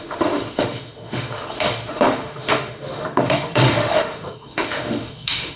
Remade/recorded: remade